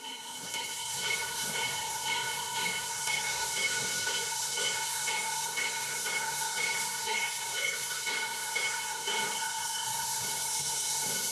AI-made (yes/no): yes